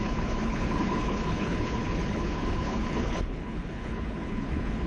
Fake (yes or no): yes